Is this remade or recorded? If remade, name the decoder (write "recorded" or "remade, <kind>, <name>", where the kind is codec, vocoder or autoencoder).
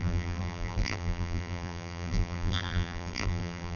remade, vocoder, BigVGAN v2